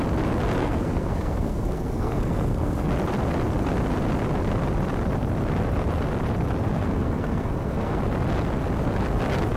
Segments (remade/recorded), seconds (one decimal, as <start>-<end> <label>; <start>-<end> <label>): 0.0-0.6 recorded; 0.6-2.9 remade; 2.9-6.7 recorded; 6.7-8.0 remade; 8.0-9.6 recorded